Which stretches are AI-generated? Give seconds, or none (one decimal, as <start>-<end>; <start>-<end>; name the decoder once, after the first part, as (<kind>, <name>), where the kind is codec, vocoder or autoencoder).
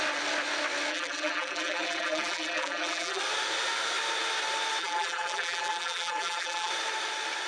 0.9-3.2 (vocoder, BigVGAN v2); 4.8-6.7